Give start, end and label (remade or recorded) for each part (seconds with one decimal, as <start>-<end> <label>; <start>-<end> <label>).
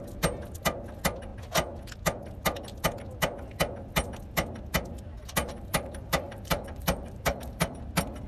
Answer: 0.0-5.4 recorded; 5.4-7.9 remade; 7.9-8.3 recorded